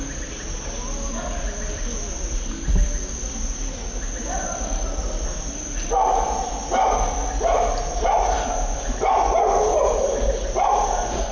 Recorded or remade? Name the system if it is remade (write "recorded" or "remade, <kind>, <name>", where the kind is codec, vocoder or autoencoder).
recorded